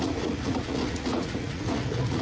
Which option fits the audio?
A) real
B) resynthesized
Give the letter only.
B